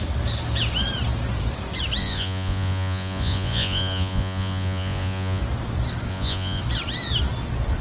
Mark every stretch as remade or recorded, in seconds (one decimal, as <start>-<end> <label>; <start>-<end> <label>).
0.0-2.0 recorded; 2.0-5.4 remade; 5.4-6.1 recorded; 6.1-6.6 remade; 6.6-7.8 recorded